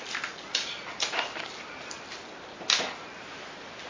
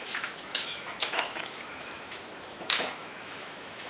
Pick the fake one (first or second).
second